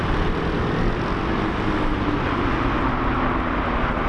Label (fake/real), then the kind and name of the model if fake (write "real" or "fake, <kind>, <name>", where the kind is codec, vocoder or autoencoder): real